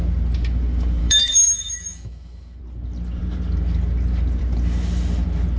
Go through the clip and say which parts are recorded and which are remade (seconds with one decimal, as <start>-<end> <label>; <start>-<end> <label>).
0.0-1.0 recorded; 1.0-2.6 remade; 2.6-5.6 recorded